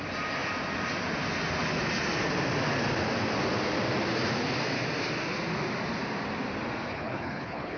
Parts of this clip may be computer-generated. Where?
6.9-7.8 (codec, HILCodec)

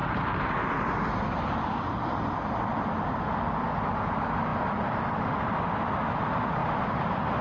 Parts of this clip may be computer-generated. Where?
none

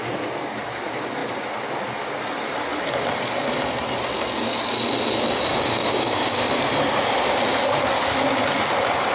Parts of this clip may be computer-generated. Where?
5.5-6.6 (codec, DAC)

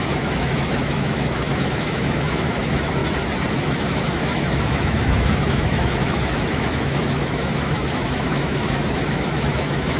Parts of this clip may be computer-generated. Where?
0.0-3.0 (autoencoder, DAC-VAE); 3.6-10.0

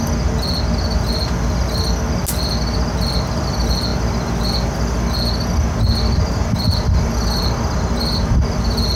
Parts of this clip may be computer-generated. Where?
none

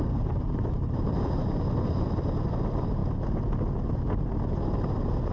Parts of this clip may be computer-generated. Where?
none